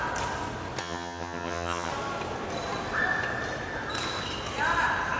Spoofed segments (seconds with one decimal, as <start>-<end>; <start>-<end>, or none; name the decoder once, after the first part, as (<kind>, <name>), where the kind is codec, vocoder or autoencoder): 0.8-1.9 (vocoder, HiFi-GAN)